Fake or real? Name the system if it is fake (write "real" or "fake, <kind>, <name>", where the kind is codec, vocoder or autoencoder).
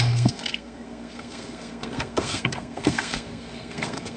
fake, codec, SNAC